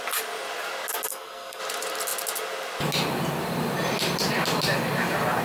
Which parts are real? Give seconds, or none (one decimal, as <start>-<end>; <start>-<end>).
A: 0.0-1.1; 1.6-5.4